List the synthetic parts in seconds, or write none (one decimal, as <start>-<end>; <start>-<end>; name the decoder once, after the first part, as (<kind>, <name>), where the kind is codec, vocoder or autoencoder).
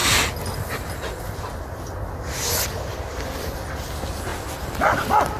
none